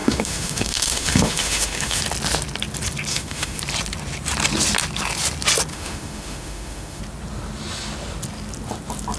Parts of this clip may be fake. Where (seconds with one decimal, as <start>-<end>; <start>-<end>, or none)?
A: 0.0-2.0; 3.1-3.6; 5.7-7.0